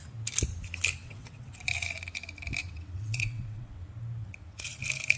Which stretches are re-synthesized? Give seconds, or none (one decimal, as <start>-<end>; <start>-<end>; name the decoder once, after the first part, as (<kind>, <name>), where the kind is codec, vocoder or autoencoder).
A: 1.0-1.6 (vocoder, WaveNeXt); 2.6-3.8; 4.2-4.8